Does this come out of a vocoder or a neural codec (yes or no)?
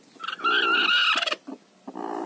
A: no